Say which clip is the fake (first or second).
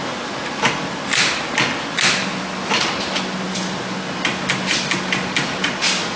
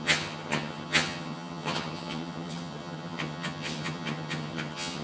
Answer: second